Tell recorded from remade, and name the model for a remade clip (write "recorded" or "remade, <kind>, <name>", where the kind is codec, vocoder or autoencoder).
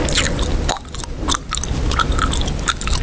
recorded